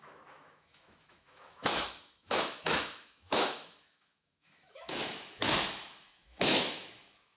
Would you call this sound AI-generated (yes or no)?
yes